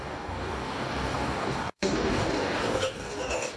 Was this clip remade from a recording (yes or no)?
yes